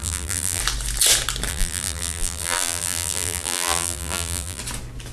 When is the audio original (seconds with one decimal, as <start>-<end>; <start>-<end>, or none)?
0.6-1.5; 4.6-5.1